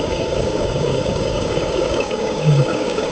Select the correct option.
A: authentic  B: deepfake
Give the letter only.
B